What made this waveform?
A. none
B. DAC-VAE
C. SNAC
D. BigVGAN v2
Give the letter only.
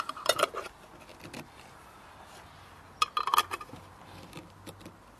A